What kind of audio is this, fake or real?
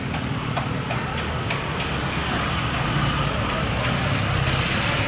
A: real